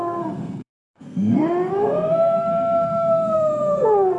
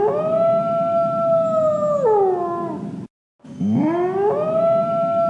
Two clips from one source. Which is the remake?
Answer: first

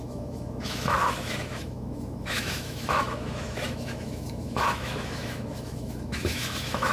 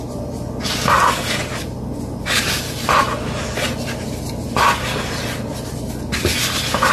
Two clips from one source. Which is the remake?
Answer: first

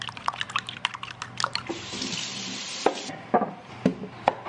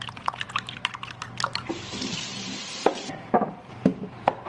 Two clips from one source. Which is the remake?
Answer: second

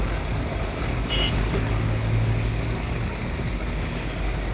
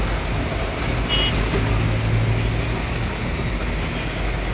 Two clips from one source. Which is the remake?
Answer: first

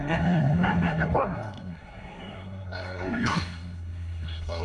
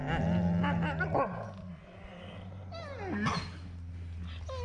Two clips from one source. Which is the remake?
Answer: first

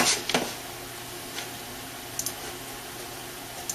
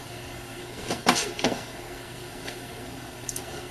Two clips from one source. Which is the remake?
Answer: second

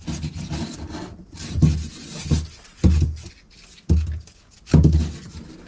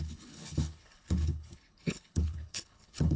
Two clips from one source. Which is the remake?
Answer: second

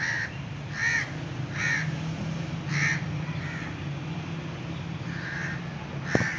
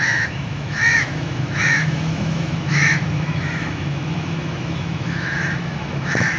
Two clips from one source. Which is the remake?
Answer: second